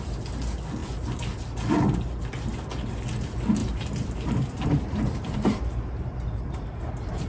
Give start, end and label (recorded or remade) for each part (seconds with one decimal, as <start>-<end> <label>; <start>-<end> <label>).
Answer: 0.0-3.6 recorded; 3.6-7.3 remade